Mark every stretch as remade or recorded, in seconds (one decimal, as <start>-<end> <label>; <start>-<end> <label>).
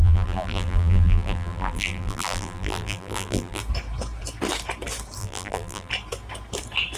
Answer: 0.0-3.6 remade; 3.6-5.2 recorded; 5.2-5.9 remade; 5.9-7.0 recorded